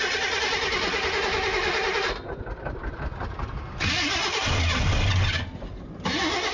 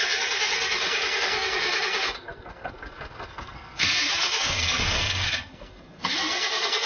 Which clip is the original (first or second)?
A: first